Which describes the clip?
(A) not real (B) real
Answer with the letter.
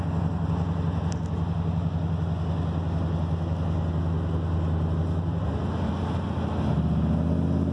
B